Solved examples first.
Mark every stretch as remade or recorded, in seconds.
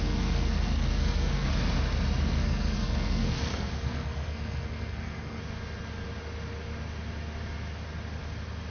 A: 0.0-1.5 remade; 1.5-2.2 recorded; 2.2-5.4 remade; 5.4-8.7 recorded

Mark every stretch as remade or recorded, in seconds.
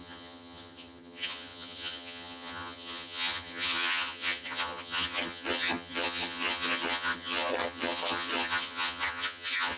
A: 0.0-9.8 remade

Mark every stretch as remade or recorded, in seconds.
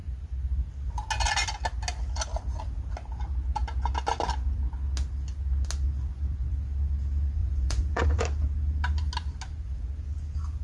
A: 0.0-7.4 recorded; 7.4-8.2 remade; 8.2-10.6 recorded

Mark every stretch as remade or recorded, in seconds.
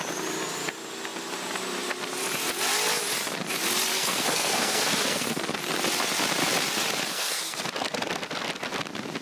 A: 0.0-3.9 recorded; 3.9-5.4 remade; 5.4-7.1 recorded; 7.1-7.6 remade; 7.6-9.2 recorded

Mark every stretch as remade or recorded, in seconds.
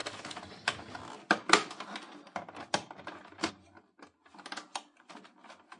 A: 0.0-5.8 recorded